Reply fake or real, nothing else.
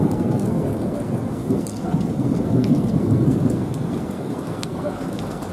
fake